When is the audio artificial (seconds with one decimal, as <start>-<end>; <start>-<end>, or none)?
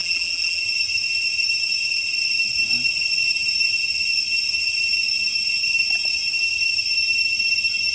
0.0-0.6